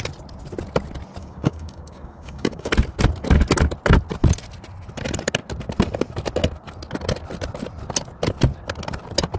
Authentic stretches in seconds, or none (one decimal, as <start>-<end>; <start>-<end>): 0.0-1.2; 2.7-9.4